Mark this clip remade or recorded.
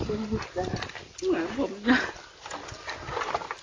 recorded